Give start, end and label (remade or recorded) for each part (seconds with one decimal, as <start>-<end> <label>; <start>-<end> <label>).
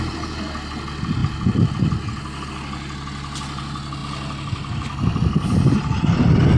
0.0-6.6 recorded